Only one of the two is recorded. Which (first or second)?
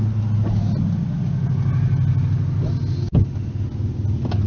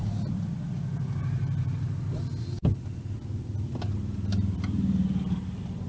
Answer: first